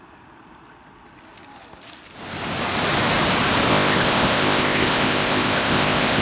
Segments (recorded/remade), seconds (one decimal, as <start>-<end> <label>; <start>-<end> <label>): 0.0-3.7 recorded; 3.7-6.2 remade